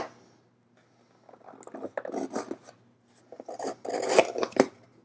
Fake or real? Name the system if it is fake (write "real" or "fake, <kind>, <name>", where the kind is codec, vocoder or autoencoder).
real